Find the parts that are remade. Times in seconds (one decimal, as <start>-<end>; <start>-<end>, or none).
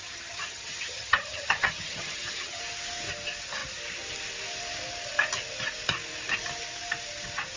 0.0-2.6